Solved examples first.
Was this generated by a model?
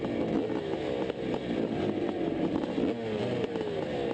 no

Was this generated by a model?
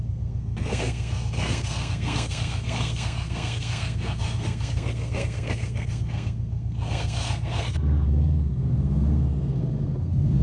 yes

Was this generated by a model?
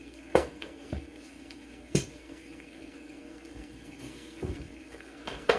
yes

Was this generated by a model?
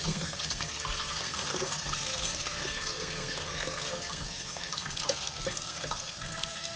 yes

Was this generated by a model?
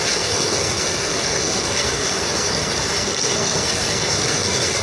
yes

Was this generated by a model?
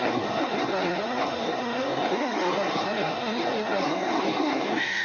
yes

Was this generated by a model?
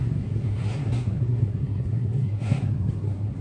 yes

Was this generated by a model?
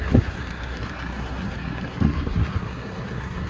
yes